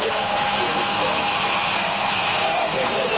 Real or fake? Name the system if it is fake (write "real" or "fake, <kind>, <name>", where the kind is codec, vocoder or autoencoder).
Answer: fake, codec, SNAC